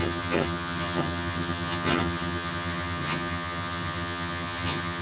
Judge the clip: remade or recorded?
remade